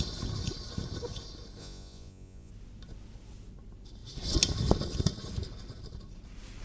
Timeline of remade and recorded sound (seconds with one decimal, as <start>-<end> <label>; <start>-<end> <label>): 0.0-1.6 recorded; 1.6-2.5 remade; 2.5-6.6 recorded